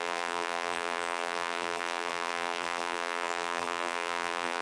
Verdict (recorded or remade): remade